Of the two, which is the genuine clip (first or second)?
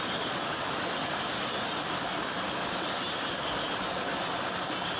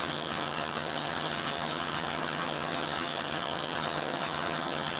first